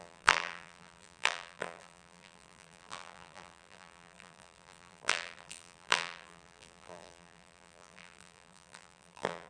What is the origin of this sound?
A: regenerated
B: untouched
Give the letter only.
A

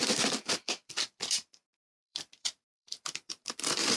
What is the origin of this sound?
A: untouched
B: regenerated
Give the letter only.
B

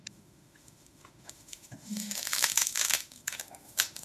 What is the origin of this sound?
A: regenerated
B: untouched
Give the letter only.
A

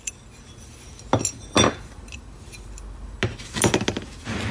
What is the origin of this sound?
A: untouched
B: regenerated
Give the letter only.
A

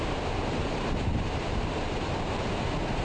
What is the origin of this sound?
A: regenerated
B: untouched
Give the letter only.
A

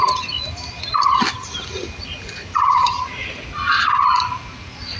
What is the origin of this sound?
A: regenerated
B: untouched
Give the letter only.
B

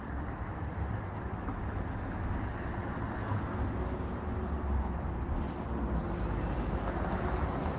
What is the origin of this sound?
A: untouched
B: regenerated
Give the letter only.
A